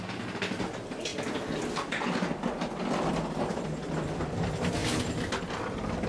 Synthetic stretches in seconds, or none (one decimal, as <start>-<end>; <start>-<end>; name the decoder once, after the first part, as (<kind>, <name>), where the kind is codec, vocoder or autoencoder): none